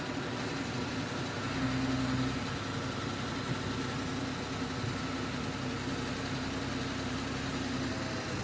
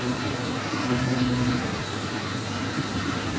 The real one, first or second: first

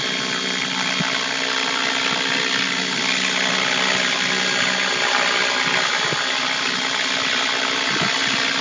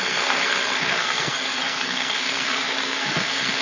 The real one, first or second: first